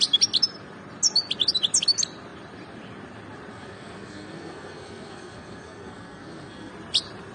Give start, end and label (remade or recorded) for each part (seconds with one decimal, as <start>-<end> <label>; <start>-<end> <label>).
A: 0.0-3.5 recorded; 3.5-6.7 remade; 6.7-7.3 recorded